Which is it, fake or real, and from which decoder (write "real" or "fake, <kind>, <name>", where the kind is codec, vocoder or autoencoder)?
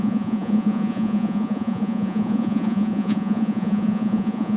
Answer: fake, vocoder, Vocos